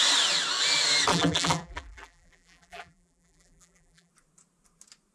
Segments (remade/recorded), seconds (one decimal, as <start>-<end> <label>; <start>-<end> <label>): 0.0-1.1 recorded; 1.1-4.1 remade; 4.1-5.1 recorded